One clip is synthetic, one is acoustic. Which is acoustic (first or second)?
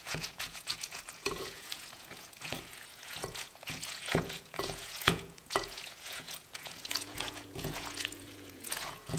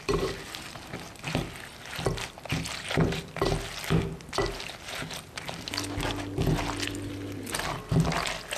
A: second